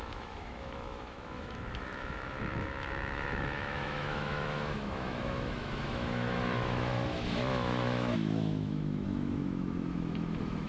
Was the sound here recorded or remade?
remade